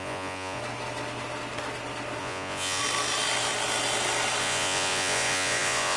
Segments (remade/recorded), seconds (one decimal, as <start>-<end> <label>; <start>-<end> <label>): 0.0-0.6 remade; 0.6-2.2 recorded; 2.2-2.8 remade; 2.8-4.4 recorded; 4.4-6.0 remade